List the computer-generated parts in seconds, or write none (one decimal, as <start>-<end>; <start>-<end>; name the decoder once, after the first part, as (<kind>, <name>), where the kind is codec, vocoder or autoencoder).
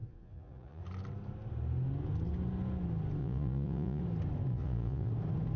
0.0-0.8 (vocoder, Vocos); 3.2-4.0; 4.5-5.1